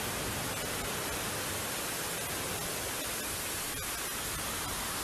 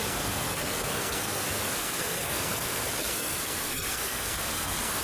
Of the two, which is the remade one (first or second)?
second